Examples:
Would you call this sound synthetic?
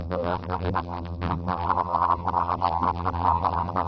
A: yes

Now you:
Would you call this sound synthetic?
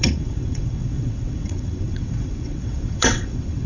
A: yes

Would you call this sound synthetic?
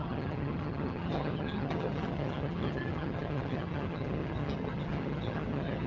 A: yes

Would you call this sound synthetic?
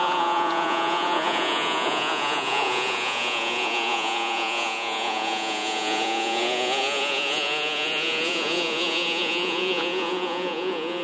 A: yes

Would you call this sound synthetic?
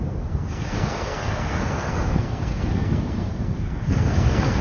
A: yes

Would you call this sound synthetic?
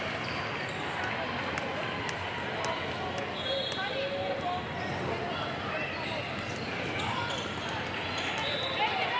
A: no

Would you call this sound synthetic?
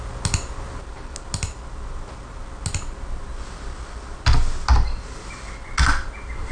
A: no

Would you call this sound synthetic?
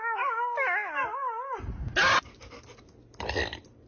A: no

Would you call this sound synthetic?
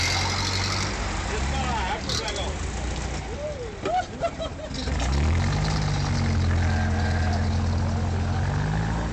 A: no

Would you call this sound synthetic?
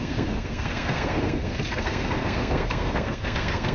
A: yes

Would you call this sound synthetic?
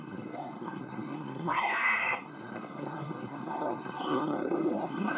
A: yes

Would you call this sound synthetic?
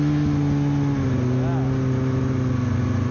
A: no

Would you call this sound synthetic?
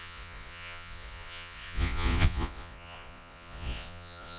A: yes